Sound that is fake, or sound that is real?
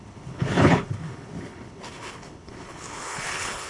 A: fake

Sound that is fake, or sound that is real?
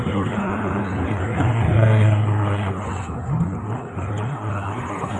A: fake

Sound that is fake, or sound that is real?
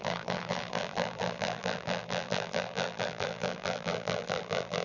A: fake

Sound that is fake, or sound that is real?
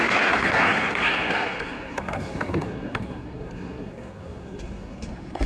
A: fake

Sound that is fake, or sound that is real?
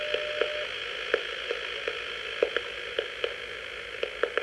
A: real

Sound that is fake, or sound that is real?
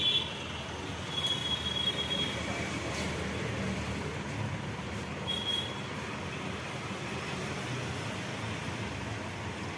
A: real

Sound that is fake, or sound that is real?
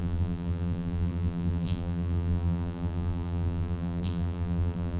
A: fake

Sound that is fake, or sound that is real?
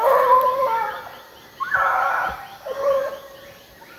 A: real